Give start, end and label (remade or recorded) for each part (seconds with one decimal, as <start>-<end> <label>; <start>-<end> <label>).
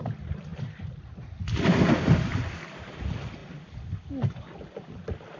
0.0-0.5 recorded; 0.5-1.0 remade; 1.0-2.3 recorded; 2.3-2.9 remade; 2.9-3.4 recorded; 3.4-5.4 remade